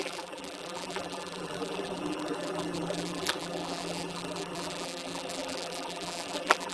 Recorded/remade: remade